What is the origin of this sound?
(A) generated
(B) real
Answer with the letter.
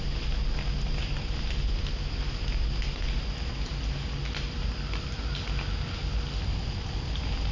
B